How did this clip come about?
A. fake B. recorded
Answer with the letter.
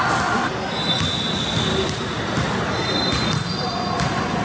B